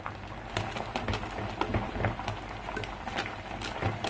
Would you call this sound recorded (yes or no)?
yes